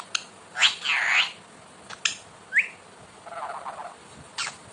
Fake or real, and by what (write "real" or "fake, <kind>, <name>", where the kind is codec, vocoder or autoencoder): real